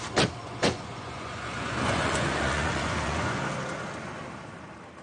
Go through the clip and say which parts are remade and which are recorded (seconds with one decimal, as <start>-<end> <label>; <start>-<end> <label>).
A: 0.0-0.4 recorded; 0.4-3.4 remade; 3.4-5.0 recorded